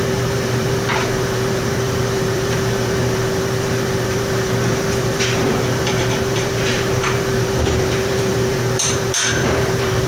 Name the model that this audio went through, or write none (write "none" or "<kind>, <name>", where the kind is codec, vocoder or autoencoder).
vocoder, BigVGAN v2